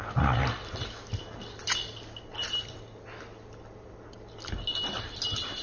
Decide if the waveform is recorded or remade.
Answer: recorded